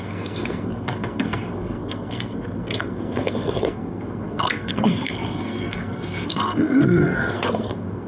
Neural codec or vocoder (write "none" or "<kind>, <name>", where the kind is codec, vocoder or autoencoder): codec, SNAC